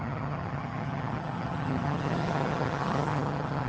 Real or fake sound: fake